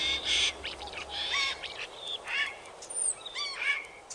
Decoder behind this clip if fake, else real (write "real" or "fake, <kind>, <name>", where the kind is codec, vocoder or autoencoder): fake, vocoder, BigVGAN v2